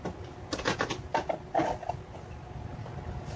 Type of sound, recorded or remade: recorded